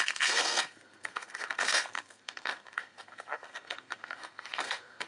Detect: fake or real fake